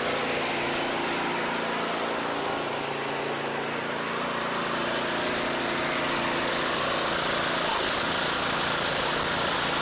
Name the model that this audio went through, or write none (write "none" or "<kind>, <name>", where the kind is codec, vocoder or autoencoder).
none